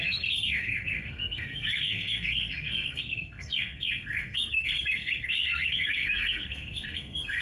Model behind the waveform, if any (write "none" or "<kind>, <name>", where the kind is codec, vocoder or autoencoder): codec, SNAC